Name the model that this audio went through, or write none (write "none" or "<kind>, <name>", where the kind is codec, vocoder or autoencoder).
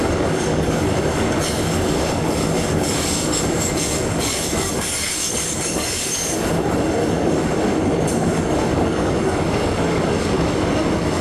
codec, DAC